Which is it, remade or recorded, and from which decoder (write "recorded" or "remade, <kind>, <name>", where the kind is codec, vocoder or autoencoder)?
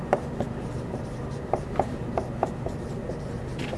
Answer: remade, vocoder, BigVGAN v2